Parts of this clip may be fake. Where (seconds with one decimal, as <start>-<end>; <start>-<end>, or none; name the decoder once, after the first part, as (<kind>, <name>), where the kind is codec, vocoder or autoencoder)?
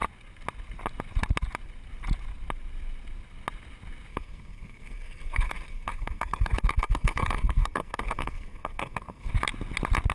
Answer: 4.1-9.3 (codec, SNAC)